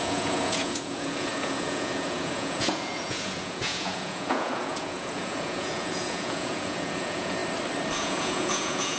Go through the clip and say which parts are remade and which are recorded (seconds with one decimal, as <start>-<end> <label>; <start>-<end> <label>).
0.0-7.4 remade; 7.4-8.0 recorded; 8.0-9.0 remade